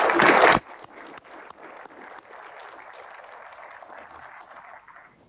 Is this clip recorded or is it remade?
recorded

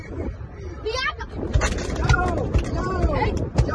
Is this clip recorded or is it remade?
recorded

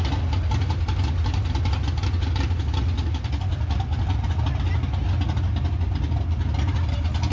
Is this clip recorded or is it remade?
recorded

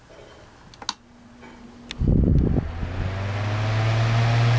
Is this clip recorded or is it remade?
recorded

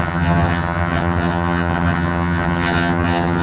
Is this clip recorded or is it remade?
remade